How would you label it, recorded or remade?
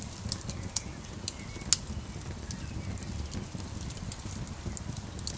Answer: recorded